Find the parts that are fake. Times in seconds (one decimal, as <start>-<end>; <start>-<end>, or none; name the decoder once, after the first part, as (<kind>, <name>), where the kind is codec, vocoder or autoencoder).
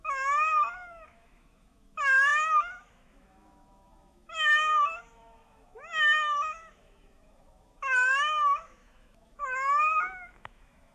0.0-10.9 (autoencoder, DAC-VAE)